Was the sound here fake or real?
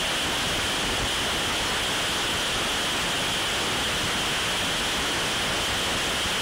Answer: real